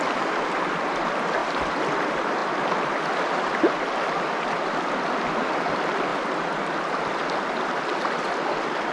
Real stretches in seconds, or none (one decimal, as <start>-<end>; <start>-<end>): 0.0-8.9

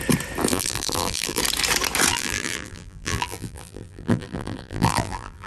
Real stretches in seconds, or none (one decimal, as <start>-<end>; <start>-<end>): 0.0-0.5; 1.4-2.1